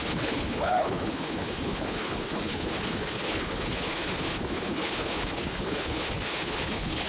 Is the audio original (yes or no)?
no